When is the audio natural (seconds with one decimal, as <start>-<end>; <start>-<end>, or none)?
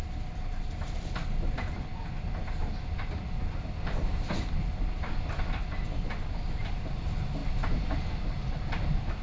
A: 0.0-9.2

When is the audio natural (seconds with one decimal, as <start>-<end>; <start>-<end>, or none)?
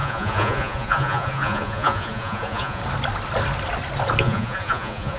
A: 2.8-4.2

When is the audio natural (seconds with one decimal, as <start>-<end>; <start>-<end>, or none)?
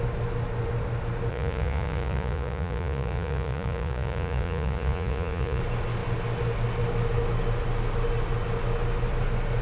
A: 0.0-1.3; 5.6-9.6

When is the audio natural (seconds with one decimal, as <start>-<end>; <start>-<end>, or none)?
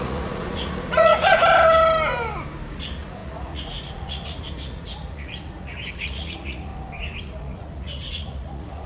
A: 1.4-2.7; 6.7-7.2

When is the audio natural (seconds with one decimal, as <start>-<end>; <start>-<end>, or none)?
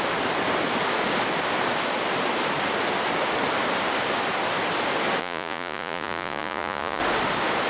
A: 0.0-5.2; 7.0-7.7